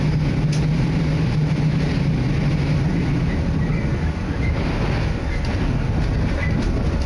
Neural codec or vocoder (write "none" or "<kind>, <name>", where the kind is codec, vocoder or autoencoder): none